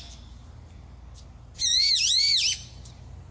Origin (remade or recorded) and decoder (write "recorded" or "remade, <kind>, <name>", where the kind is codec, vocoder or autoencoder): recorded